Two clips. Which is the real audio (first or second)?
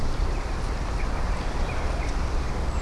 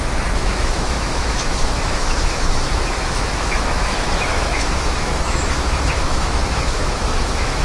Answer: first